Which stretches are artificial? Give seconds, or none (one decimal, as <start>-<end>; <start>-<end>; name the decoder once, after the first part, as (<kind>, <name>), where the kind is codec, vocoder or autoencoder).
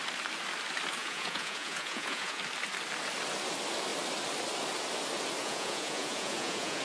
1.0-2.4 (vocoder, Vocos); 5.4-6.8